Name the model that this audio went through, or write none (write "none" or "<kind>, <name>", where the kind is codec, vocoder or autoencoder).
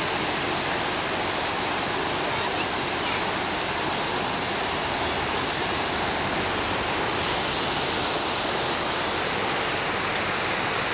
none